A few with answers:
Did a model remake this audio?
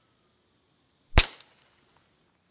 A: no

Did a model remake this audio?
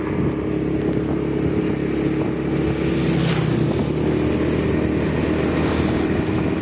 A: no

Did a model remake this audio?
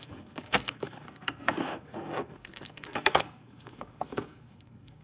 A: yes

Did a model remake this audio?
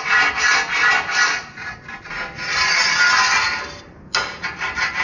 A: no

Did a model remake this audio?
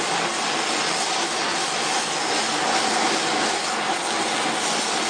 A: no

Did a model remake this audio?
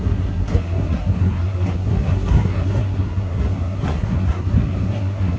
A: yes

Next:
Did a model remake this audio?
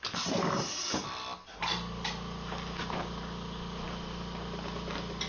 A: no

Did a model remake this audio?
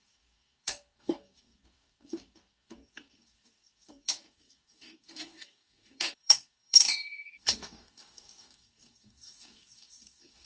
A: yes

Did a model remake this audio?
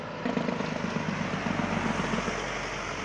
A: no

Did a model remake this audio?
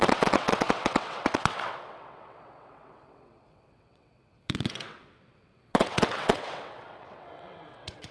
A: yes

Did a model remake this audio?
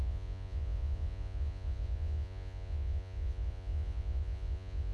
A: yes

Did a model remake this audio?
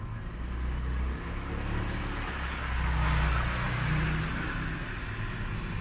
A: no